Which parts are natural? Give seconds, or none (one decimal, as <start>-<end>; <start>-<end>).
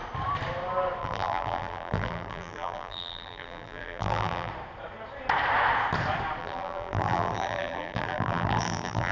0.0-1.0; 4.5-6.4